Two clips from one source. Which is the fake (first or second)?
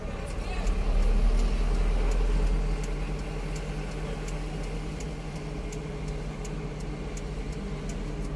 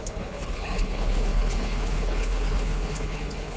second